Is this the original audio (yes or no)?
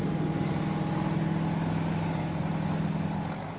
yes